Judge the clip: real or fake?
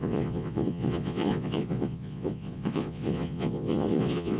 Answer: fake